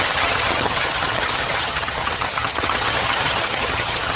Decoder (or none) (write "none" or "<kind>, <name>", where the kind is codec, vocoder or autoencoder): vocoder, HiFi-GAN